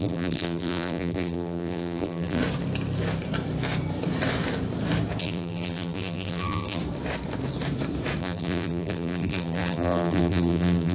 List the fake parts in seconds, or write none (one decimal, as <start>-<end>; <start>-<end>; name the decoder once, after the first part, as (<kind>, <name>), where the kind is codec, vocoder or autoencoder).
0.0-2.4 (vocoder, BigVGAN v2); 5.2-6.8; 8.2-10.9